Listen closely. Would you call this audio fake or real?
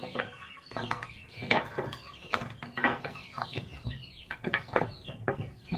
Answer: fake